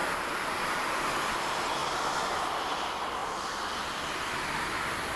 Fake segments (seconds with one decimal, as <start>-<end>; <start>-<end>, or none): 0.0-1.0; 1.8-2.6